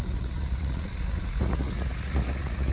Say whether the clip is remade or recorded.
remade